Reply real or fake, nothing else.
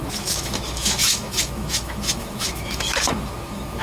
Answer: fake